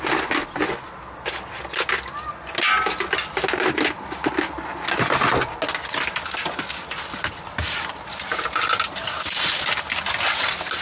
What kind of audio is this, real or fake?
real